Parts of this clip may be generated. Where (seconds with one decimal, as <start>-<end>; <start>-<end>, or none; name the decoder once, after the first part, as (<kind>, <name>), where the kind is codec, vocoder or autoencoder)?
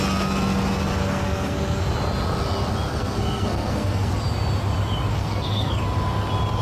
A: 1.0-1.8 (codec, SNAC); 2.9-4.1; 5.1-5.8